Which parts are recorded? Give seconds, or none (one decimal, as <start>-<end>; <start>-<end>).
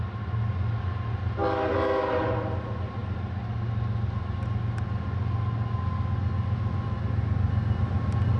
0.0-8.4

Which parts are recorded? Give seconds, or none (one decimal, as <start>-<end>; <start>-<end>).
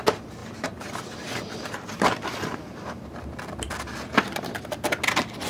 0.0-0.4; 3.7-5.5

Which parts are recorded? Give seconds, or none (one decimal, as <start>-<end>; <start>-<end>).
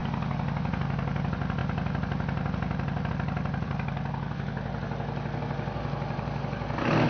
0.0-7.1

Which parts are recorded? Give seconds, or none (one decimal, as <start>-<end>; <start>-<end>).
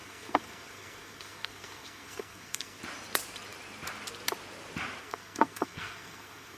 2.8-5.0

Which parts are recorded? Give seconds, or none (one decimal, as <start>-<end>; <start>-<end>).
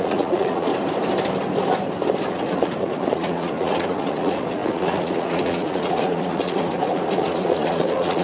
0.7-2.3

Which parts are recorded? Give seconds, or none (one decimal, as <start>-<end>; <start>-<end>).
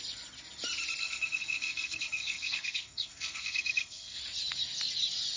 0.0-1.0; 4.2-5.4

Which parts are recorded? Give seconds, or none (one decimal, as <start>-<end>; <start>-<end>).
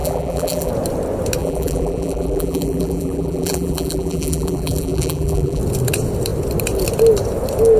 0.7-1.4; 5.6-7.8